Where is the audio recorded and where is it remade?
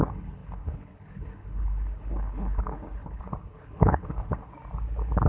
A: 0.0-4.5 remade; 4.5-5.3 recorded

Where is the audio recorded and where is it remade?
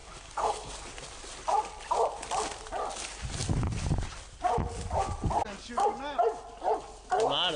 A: 0.0-0.7 remade; 0.7-7.6 recorded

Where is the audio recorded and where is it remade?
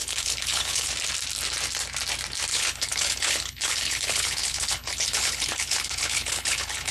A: 0.0-0.9 remade; 0.9-2.5 recorded; 2.5-6.9 remade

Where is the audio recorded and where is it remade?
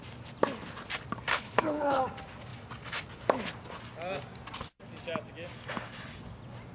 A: 0.0-1.3 recorded; 1.3-2.0 remade; 2.0-6.7 recorded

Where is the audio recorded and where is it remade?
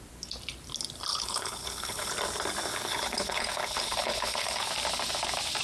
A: 0.0-1.1 recorded; 1.1-2.1 remade; 2.1-2.7 recorded; 2.7-4.7 remade; 4.7-5.6 recorded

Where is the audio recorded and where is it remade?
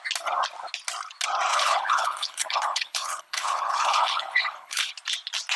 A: 0.0-1.5 recorded; 1.5-4.9 remade; 4.9-5.6 recorded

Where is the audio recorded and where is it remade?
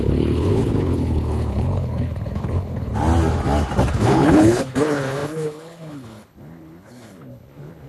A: 0.0-2.9 remade; 2.9-3.9 recorded; 3.9-7.9 remade